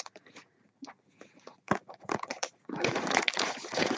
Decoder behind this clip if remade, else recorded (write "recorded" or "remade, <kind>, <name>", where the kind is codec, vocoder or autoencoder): remade, vocoder, Vocos